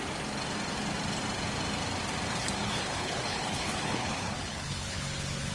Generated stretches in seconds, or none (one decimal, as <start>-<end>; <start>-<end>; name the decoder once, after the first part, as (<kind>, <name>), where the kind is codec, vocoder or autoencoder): 2.6-5.5 (codec, HILCodec)